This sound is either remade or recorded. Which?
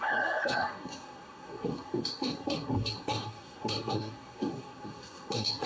remade